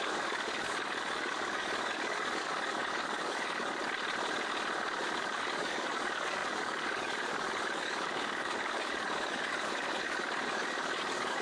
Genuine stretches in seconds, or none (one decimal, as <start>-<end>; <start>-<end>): 3.8-5.2